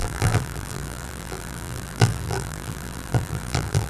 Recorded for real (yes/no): no